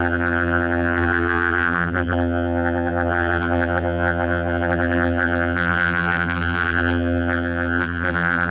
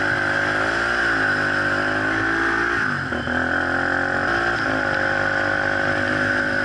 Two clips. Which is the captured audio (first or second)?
second